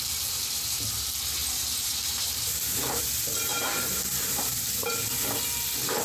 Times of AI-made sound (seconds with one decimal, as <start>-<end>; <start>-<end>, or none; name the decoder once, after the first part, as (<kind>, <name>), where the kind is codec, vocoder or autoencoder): 1.4-3.0 (vocoder, BigVGAN v2); 3.5-4.1

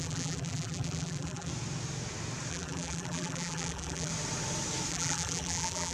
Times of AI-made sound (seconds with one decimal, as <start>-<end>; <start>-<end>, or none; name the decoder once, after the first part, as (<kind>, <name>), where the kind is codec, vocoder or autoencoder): 0.0-1.5 (vocoder, BigVGAN v2); 2.5-4.1; 4.9-5.9

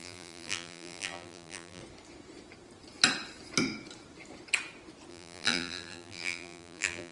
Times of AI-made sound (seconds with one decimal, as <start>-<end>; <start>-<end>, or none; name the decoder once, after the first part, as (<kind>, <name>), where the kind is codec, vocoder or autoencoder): 0.0-1.8 (vocoder, BigVGAN v2); 5.1-7.1

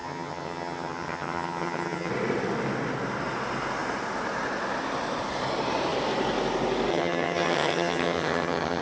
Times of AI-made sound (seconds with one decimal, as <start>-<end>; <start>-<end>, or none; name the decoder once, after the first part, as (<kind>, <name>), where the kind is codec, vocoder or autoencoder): 0.0-2.1 (vocoder, HiFi-GAN); 6.9-8.8

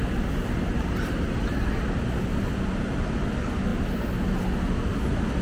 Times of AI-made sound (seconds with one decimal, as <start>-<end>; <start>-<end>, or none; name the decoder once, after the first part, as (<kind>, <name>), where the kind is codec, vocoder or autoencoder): none

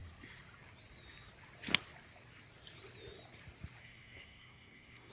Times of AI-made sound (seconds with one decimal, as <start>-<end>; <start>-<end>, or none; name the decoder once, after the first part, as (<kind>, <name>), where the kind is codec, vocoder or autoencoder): 3.8-5.1 (codec, SNAC)

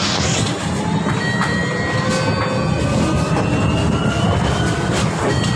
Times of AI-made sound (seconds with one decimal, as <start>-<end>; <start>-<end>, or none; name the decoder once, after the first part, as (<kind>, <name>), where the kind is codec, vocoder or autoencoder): none